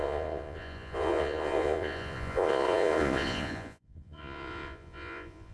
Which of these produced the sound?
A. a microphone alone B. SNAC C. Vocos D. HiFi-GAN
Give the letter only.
C